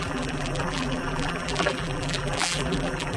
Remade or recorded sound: remade